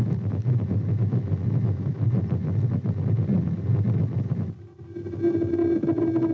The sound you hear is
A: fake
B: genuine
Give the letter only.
B